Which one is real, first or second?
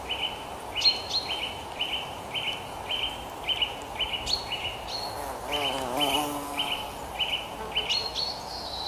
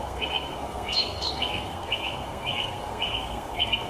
first